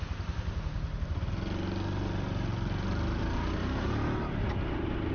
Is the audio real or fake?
real